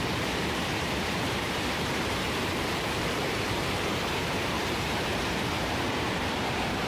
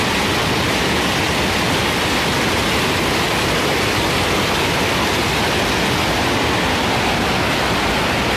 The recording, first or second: second